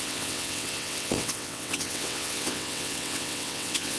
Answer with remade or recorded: remade